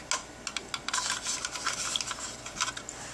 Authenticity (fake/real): real